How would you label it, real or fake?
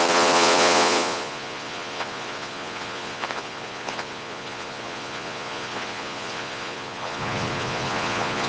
fake